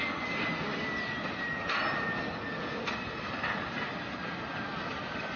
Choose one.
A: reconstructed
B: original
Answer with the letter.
B